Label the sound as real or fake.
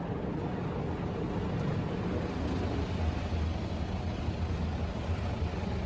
real